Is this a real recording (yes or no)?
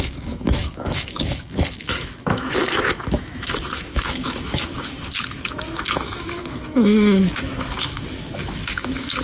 no